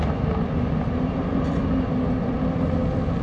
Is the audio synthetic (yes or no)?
no